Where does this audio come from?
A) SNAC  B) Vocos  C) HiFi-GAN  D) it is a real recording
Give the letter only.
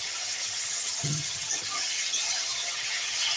C